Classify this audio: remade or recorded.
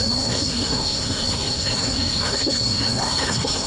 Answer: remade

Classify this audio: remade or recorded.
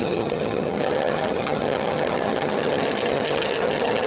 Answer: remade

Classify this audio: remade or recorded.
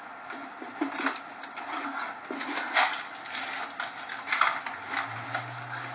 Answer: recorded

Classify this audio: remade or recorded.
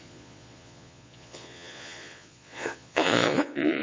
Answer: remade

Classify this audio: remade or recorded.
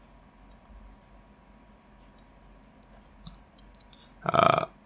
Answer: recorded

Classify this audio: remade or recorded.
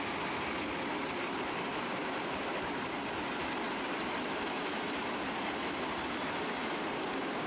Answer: remade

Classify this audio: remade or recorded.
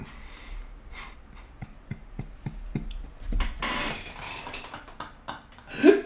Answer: recorded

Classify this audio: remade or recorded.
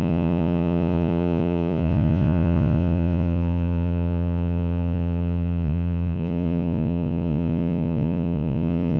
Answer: remade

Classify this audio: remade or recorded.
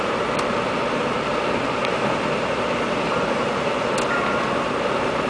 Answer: remade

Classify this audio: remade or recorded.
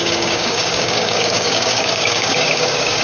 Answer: remade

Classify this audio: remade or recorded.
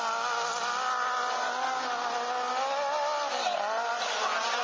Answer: recorded